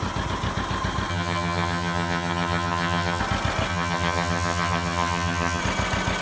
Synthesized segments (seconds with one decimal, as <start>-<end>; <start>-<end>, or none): 1.1-3.2; 3.7-5.6